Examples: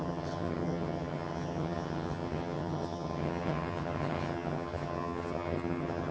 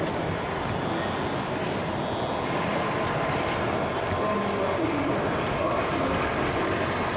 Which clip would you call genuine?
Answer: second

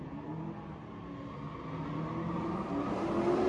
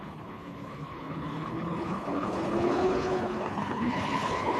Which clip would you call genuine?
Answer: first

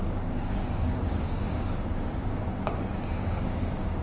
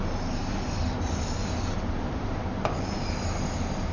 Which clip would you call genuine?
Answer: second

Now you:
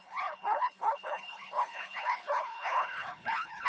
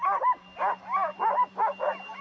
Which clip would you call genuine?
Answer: second